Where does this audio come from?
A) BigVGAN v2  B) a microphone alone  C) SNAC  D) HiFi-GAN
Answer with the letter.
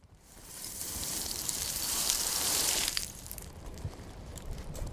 A